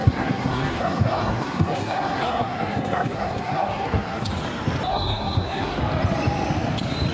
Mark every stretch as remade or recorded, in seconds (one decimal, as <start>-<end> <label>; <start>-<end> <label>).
0.0-4.3 remade; 4.3-4.9 recorded; 4.9-5.8 remade; 5.8-7.1 recorded